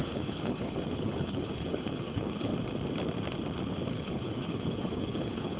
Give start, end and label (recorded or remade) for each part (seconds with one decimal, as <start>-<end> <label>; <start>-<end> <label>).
0.0-2.5 remade; 2.5-3.9 recorded; 3.9-5.6 remade